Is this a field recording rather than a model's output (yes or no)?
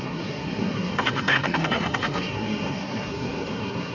no